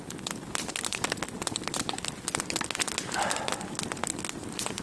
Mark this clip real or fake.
real